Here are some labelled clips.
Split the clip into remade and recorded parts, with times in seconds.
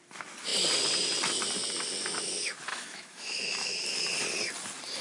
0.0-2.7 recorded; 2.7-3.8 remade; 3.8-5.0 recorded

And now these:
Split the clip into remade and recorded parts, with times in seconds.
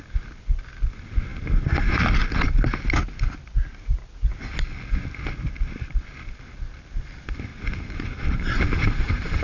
0.0-7.5 recorded; 7.5-9.4 remade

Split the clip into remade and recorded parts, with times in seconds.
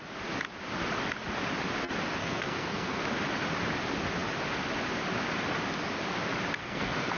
0.0-2.2 recorded; 2.2-3.0 remade; 3.0-6.6 recorded; 6.6-7.2 remade